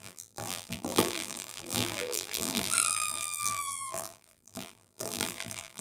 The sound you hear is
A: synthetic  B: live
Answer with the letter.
A